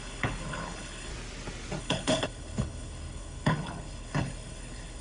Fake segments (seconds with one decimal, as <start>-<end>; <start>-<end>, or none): 0.0-1.1; 1.8-5.0